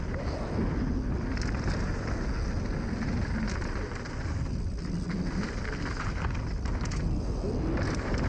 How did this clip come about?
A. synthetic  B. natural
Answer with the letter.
B